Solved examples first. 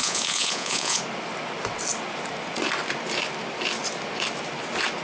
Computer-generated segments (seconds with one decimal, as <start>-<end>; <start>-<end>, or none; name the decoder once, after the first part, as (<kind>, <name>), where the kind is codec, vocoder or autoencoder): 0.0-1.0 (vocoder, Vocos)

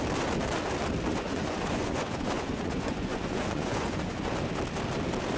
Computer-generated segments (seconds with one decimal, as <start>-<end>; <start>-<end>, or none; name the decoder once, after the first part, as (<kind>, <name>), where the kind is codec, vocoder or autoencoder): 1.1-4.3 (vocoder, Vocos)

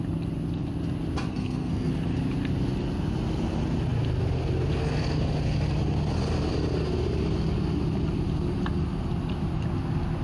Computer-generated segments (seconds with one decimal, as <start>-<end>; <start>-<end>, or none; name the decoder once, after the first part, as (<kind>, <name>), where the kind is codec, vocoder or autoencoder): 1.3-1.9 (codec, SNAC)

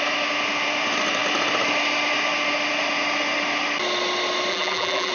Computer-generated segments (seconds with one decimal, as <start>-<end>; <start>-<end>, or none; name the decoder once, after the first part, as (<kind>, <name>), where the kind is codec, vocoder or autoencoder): 4.5-5.1 (vocoder, BigVGAN v2)